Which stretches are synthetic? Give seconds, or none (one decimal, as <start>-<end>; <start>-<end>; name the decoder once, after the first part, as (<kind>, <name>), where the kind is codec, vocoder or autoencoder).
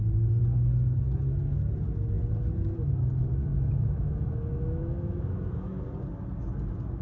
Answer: 3.5-5.8 (autoencoder, DAC-VAE)